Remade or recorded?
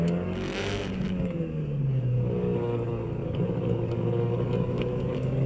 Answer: remade